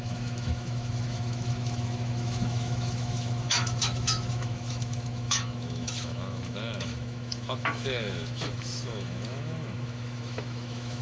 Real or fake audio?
fake